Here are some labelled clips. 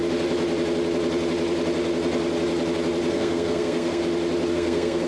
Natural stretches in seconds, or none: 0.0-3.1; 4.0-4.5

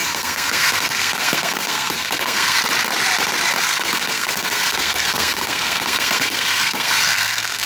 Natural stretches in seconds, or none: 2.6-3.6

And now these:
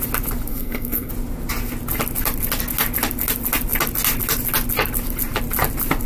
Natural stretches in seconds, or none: 0.0-0.5; 1.1-6.1

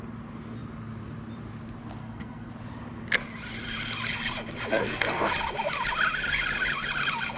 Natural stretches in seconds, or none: 0.0-2.0; 2.5-4.8; 5.3-7.4

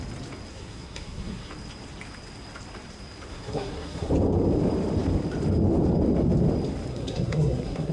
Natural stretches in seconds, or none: 0.0-0.5; 1.5-3.3; 4.1-6.9

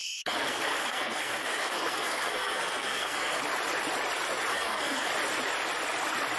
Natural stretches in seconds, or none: 3.4-4.5; 5.1-6.4

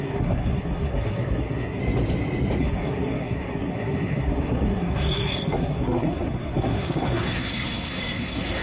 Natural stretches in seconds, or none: 1.8-2.6

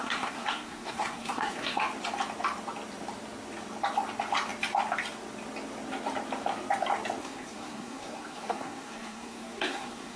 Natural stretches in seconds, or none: 1.8-7.2